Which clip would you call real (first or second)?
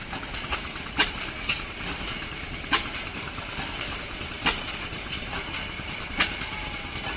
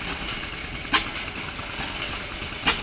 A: second